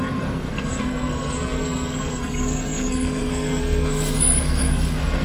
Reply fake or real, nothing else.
fake